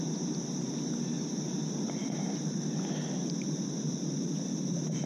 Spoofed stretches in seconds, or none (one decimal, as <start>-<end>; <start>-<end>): none